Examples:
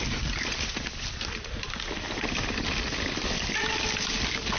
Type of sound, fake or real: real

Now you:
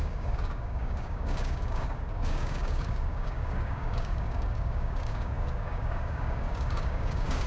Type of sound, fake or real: fake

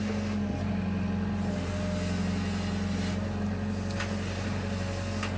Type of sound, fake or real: real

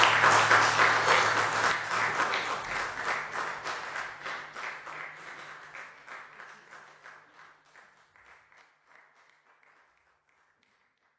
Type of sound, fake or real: real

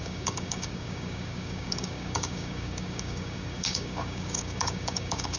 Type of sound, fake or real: fake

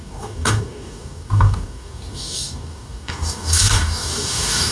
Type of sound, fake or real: fake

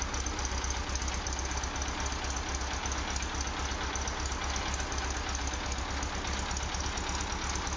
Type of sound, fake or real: real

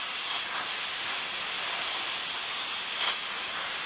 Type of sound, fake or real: real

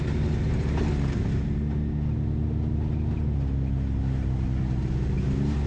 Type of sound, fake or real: real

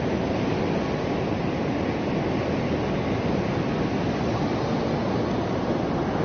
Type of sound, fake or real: real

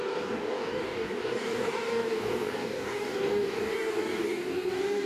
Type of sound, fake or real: fake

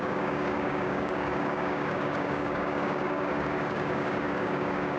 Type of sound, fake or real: fake